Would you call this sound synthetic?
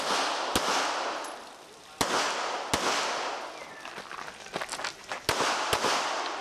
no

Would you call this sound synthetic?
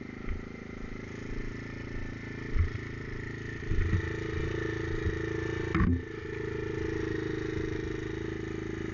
no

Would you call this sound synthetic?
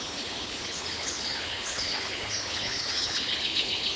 yes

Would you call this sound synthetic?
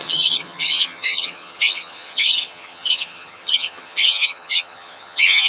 yes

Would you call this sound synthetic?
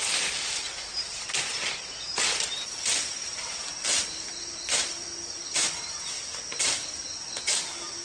no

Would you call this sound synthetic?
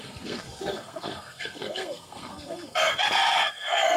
yes